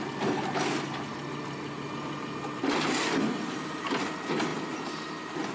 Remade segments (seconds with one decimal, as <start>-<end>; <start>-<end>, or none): none